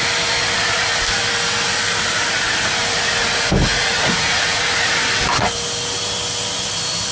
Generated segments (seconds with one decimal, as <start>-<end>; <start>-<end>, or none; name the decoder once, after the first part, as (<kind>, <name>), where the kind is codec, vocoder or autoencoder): 3.7-5.0 (vocoder, Vocos)